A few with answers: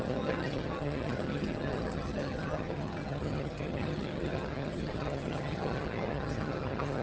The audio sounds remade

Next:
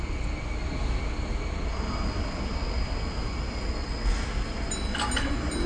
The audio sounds recorded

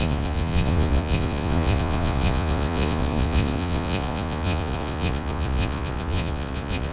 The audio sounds remade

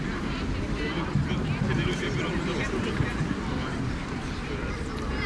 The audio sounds remade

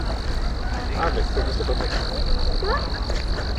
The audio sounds recorded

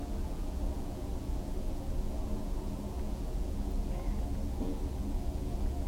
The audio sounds remade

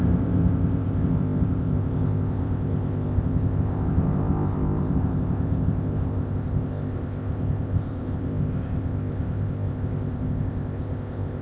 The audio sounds remade